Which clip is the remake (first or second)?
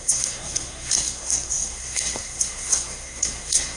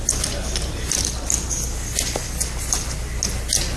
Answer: first